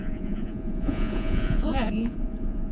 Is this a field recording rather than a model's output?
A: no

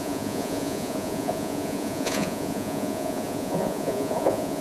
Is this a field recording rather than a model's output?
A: no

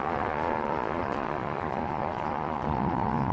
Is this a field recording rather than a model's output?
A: no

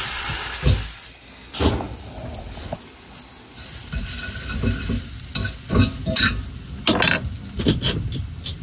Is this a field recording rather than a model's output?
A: yes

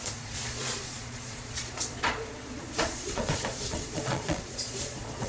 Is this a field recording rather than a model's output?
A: no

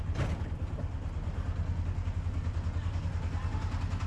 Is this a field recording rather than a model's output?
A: yes